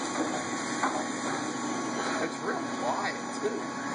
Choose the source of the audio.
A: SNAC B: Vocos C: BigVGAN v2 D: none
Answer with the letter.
D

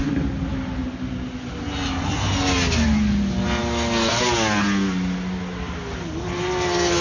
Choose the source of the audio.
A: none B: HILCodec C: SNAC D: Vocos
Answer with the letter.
A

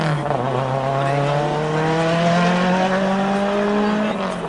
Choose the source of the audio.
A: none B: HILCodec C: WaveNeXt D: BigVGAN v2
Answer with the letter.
A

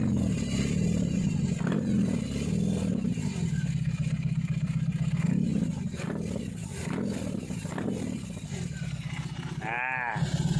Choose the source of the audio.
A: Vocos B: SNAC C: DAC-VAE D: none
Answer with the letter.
D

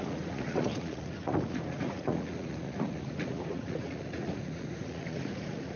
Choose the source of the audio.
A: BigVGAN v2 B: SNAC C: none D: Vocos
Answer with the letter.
D